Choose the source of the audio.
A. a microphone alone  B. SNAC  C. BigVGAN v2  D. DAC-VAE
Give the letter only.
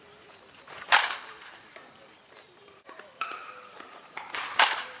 C